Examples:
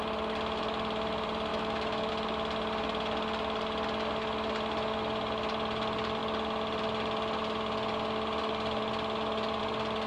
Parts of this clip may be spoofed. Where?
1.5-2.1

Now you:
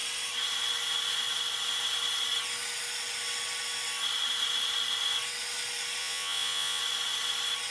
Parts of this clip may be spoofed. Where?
6.0-6.8